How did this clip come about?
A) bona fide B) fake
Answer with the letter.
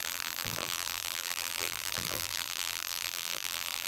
B